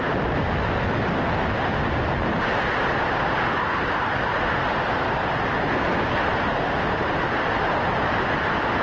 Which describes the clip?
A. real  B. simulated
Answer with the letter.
A